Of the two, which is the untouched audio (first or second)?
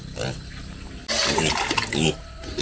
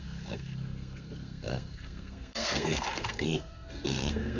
first